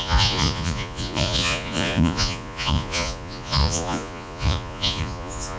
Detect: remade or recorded remade